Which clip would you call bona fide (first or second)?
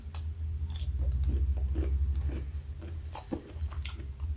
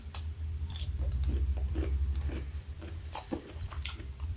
first